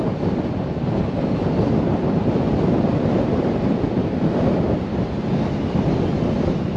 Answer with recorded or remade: recorded